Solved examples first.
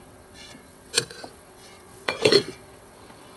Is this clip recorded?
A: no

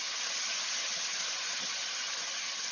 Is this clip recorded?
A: no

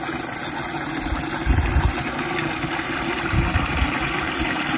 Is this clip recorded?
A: yes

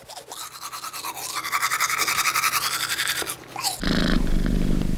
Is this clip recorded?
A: yes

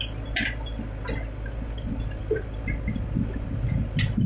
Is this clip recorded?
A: yes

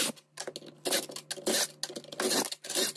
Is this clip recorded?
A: yes